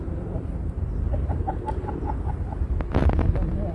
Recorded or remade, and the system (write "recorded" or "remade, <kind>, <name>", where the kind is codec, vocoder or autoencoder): recorded